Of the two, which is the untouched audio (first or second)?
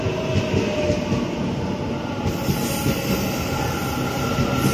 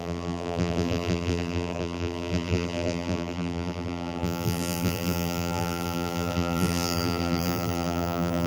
first